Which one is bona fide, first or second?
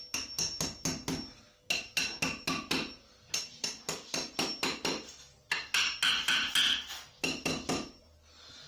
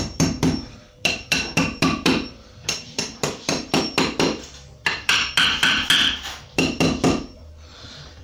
first